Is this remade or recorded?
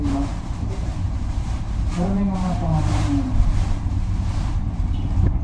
remade